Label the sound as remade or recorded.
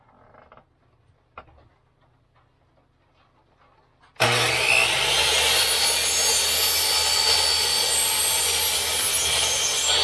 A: recorded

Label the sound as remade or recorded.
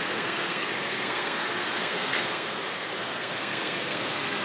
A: remade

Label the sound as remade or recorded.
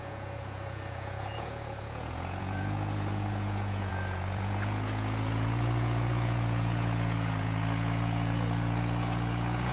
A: remade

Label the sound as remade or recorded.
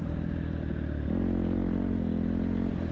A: recorded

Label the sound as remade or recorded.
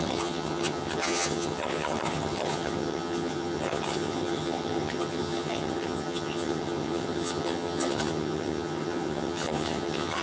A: remade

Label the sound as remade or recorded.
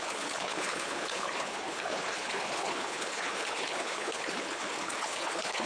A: remade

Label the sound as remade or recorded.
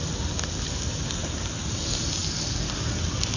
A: recorded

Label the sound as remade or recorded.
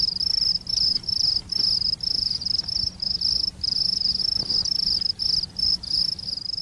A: recorded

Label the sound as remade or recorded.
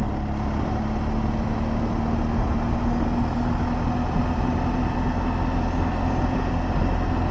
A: recorded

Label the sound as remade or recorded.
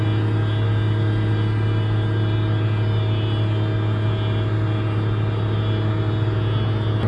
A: recorded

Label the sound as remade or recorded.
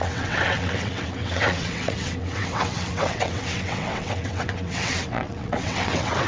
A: remade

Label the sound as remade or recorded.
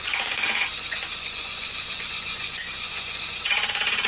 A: remade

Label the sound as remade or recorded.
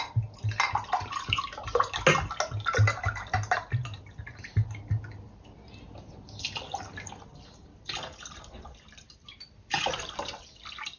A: recorded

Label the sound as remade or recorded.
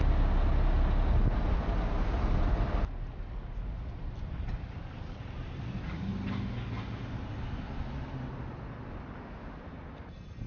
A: recorded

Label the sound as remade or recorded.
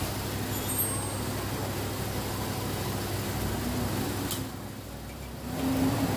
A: recorded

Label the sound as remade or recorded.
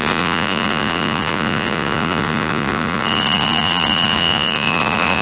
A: remade